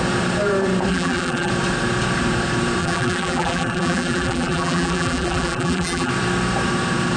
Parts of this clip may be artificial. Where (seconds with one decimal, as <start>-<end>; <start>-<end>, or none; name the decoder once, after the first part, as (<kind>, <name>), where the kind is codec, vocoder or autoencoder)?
0.9-1.5 (vocoder, BigVGAN v2); 2.8-6.1